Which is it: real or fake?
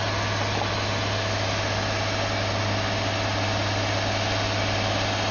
real